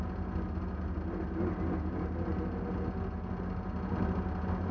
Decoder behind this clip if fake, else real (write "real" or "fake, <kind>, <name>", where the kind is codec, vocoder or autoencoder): real